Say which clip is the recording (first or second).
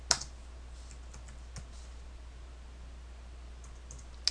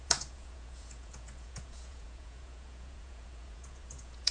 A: first